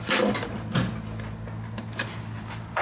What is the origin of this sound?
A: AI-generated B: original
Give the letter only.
B